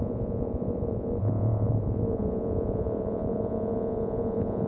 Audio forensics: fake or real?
fake